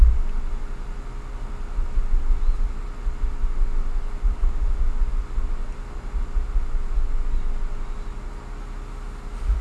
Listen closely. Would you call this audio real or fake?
real